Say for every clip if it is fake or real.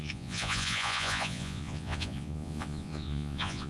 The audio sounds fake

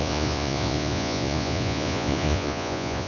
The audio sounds fake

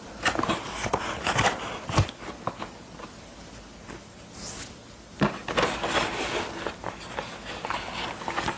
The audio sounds real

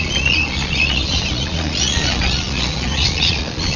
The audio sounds fake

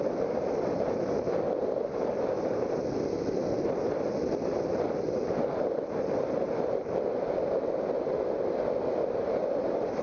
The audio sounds real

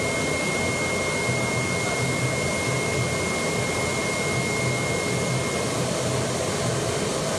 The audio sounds real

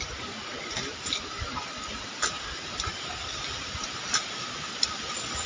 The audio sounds real